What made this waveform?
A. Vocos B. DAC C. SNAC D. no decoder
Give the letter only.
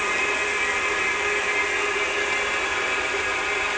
D